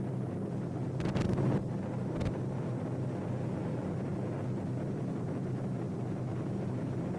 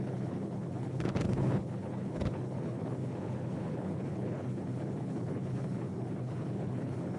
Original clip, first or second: first